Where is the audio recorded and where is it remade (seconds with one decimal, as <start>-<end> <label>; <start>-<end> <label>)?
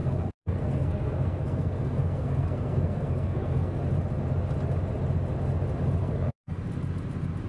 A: 0.0-3.8 remade; 3.8-6.0 recorded; 6.0-6.6 remade; 6.6-7.5 recorded